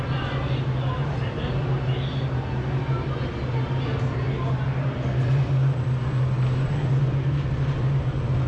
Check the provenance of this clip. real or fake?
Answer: real